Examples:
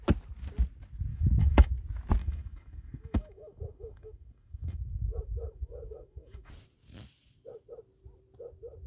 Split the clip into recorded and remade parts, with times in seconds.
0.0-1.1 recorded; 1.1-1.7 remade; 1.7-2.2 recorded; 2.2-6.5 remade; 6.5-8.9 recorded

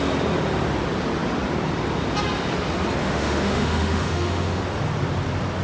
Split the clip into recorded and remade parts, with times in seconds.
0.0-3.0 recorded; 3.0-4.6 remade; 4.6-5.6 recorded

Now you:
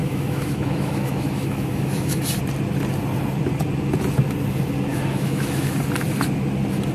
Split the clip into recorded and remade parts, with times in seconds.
0.0-2.2 remade; 2.2-4.9 recorded; 4.9-5.8 remade; 5.8-6.9 recorded

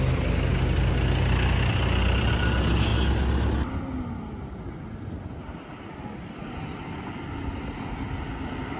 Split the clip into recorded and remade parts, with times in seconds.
0.0-8.8 recorded

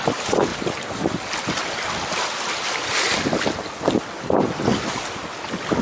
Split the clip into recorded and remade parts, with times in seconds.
0.0-5.8 recorded

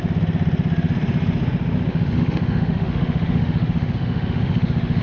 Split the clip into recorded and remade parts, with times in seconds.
0.0-1.9 recorded; 1.9-5.0 remade